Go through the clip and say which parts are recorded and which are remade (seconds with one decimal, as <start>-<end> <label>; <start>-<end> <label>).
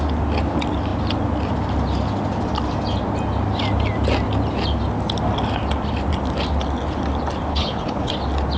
0.0-7.5 recorded; 7.5-8.1 remade; 8.1-8.6 recorded